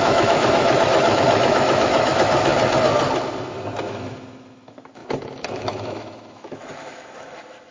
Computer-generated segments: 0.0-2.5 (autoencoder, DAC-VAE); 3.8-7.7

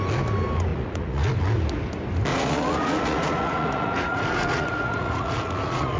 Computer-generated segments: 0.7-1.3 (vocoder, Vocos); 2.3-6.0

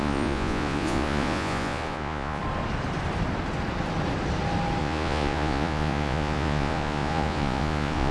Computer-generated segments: 0.0-2.4 (vocoder, Vocos); 4.8-8.1

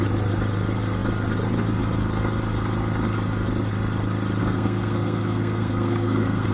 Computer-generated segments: 4.4-6.5 (codec, SNAC)

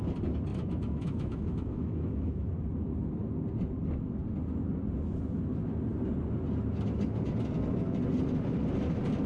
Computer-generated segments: 0.5-2.5 (autoencoder, DAC-VAE)